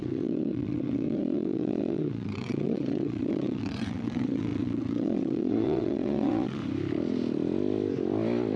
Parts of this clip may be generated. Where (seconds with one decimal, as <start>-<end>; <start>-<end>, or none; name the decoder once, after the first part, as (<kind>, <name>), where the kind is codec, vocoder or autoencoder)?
0.0-6.6 (vocoder, WaveNeXt)